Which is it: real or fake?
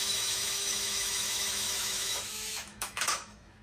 fake